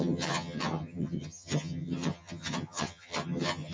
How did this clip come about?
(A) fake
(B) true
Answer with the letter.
A